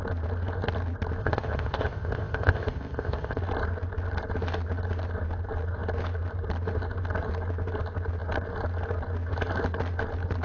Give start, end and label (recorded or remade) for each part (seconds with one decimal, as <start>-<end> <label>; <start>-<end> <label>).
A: 0.0-1.2 recorded; 1.2-3.4 remade; 3.4-10.4 recorded